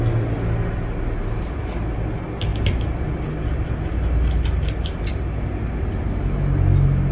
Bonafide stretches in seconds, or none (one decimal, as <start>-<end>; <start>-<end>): 0.0-7.1